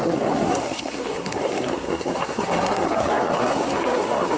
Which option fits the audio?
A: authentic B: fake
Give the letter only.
B